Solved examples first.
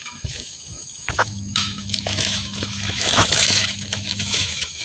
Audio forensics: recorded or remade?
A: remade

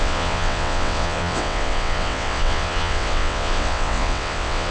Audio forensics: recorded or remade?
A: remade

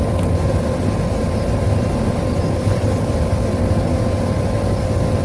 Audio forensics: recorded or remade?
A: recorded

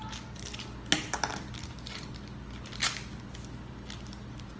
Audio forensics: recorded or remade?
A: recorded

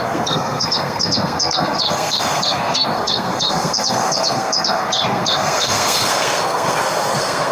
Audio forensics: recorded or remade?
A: remade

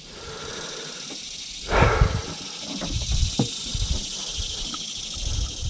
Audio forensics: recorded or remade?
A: recorded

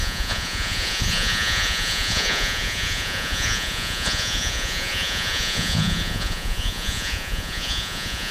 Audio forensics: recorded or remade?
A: remade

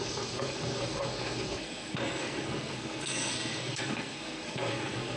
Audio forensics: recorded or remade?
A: remade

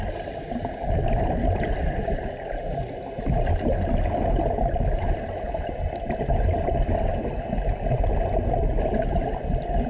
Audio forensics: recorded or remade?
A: recorded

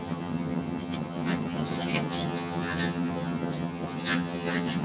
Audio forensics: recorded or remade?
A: remade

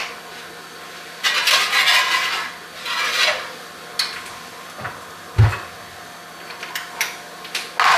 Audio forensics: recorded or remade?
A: recorded